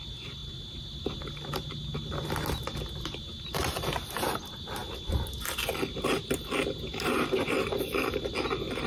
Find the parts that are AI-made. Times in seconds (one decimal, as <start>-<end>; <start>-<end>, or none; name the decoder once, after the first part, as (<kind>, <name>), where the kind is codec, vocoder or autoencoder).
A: 6.9-8.2 (vocoder, BigVGAN v2)